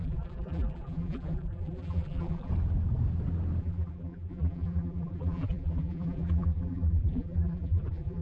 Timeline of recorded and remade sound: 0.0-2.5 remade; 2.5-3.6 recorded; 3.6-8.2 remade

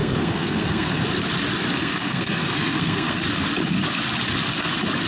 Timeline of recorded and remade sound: 0.0-1.0 remade; 1.0-1.8 recorded; 1.8-3.2 remade; 3.2-5.1 recorded

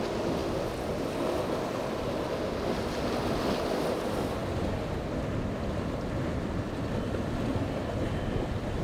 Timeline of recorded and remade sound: 0.0-4.4 recorded; 4.4-5.1 remade; 5.1-8.8 recorded

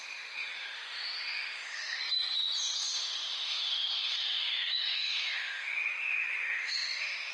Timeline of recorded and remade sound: 0.0-2.0 remade; 2.0-2.8 recorded; 2.8-7.3 remade

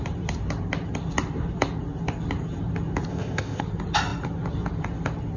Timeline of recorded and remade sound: 0.0-3.1 recorded; 3.1-3.6 remade; 3.6-5.4 recorded

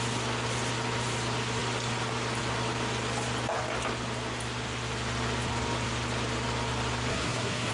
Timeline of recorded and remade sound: 0.0-7.1 recorded; 7.1-7.7 remade

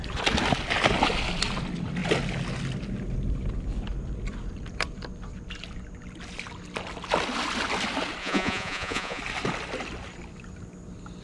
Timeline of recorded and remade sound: 0.0-8.2 recorded; 8.2-9.2 remade; 9.2-11.2 recorded

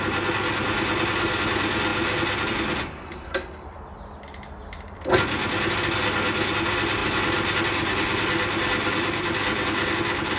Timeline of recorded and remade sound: 0.0-10.4 recorded